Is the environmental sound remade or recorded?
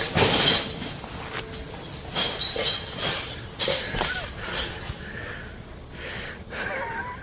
recorded